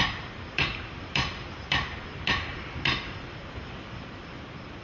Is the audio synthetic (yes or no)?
no